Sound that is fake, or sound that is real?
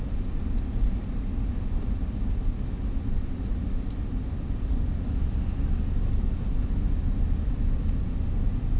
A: real